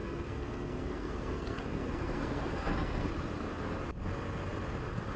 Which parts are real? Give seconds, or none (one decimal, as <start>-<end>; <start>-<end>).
3.1-5.2